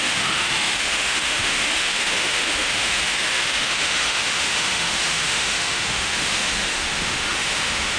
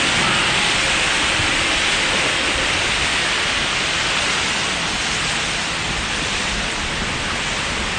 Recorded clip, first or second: second